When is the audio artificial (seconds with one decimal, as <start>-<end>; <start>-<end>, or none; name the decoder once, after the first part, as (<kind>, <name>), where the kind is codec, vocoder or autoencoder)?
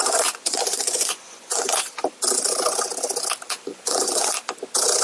0.0-1.9 (vocoder, Vocos); 3.7-4.3